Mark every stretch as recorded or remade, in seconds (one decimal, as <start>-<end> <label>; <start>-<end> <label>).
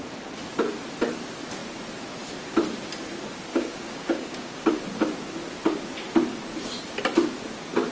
0.0-3.5 recorded; 3.5-4.8 remade; 4.8-7.9 recorded